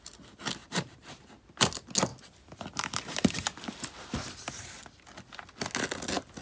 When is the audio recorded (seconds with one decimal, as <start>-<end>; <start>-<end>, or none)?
0.0-0.6; 1.3-6.4